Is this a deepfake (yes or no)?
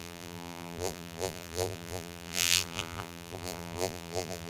yes